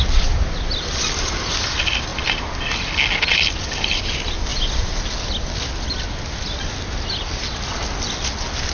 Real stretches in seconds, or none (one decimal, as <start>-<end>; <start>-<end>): 0.0-8.7